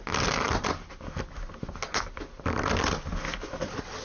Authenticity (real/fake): real